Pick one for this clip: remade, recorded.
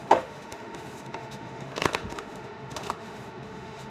remade